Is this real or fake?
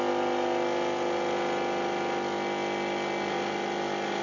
real